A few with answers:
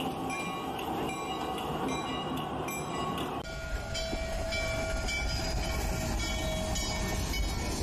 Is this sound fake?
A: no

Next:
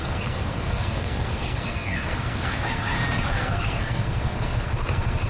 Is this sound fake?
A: yes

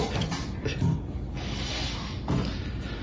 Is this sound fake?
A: no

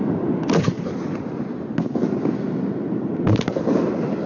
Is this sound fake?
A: no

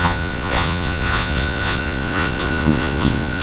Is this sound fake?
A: yes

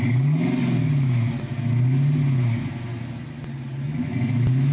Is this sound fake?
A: no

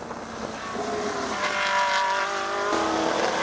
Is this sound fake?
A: no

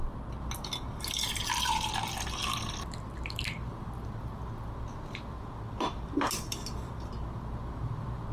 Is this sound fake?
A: no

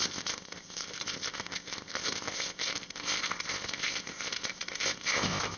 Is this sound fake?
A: yes